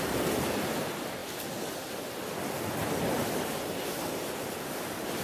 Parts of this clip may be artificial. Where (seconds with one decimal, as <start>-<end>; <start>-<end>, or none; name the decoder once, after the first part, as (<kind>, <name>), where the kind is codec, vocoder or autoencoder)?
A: none